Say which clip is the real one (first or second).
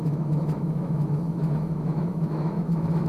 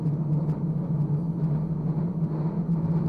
second